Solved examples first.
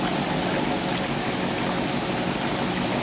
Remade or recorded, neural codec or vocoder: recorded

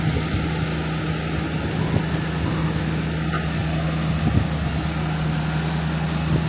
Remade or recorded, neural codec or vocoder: recorded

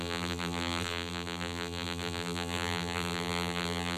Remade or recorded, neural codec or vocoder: remade, vocoder, BigVGAN v2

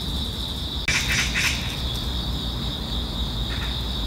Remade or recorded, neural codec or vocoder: recorded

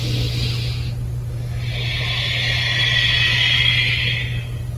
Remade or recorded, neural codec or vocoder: recorded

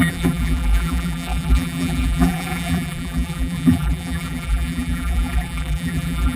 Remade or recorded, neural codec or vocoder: remade, vocoder, BigVGAN v2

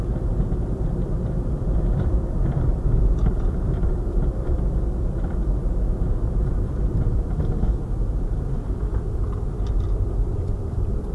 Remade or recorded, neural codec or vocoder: remade, vocoder, BigVGAN v2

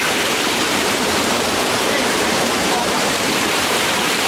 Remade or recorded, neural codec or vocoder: remade, vocoder, BigVGAN v2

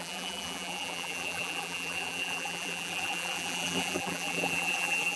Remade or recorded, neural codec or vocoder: remade, vocoder, BigVGAN v2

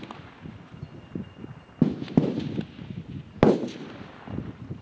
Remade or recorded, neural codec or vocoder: recorded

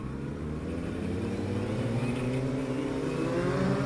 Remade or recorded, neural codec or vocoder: remade, vocoder, BigVGAN v2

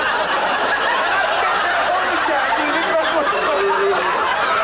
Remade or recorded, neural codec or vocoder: recorded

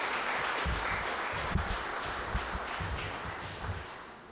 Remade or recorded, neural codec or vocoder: recorded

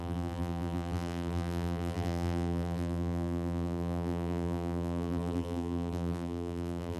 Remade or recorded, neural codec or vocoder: remade, vocoder, BigVGAN v2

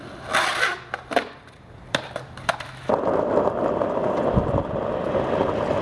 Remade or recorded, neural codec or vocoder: remade, vocoder, BigVGAN v2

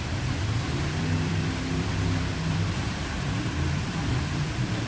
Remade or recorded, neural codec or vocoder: remade, vocoder, BigVGAN v2